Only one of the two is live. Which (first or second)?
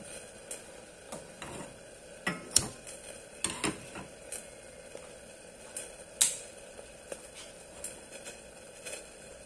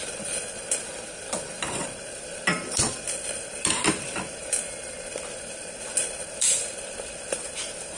first